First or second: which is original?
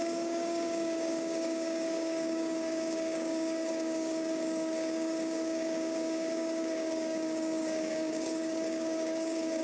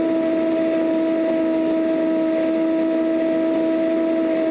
second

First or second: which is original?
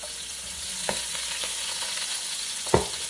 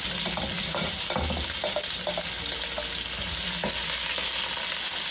second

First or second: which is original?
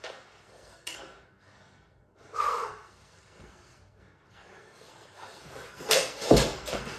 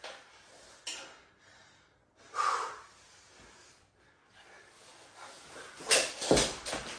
second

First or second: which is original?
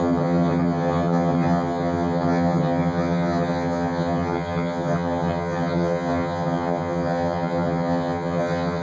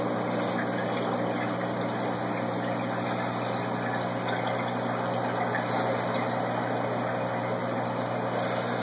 second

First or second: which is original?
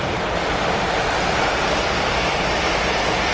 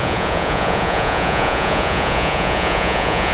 first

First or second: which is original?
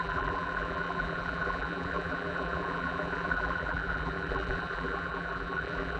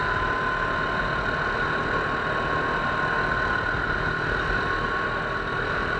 second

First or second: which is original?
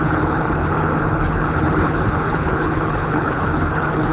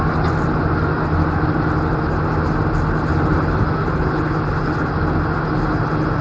second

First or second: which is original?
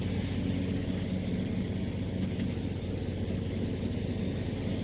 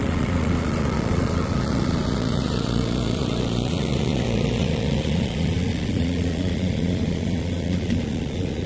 first